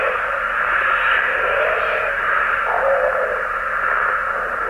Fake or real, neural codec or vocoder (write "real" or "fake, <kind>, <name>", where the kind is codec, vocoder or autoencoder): fake, vocoder, BigVGAN v2